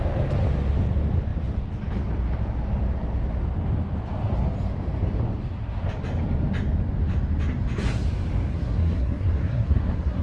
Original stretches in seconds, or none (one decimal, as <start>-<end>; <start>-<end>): 0.0-8.5